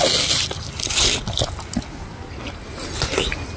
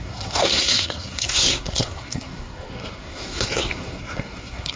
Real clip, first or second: first